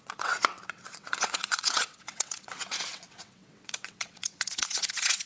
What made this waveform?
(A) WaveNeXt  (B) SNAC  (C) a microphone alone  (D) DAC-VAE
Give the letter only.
A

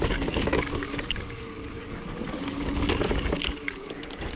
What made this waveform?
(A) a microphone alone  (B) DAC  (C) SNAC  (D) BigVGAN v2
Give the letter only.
B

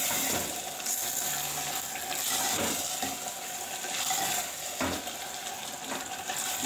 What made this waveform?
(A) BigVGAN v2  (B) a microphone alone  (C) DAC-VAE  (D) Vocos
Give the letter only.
B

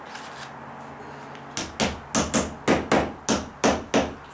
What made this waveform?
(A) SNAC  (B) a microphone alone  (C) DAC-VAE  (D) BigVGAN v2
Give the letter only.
B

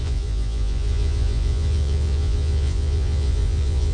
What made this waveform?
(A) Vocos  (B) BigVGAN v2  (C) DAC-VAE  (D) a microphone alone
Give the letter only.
A